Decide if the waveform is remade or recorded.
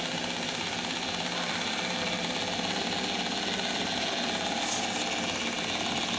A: recorded